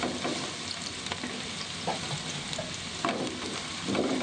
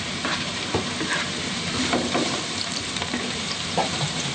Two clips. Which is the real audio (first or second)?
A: first